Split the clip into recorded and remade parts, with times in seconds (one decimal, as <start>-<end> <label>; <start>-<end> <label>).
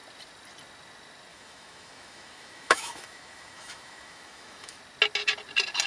0.0-1.3 recorded; 1.3-4.8 remade; 4.8-5.9 recorded